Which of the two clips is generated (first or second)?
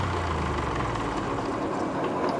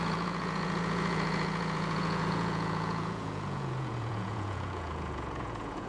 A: second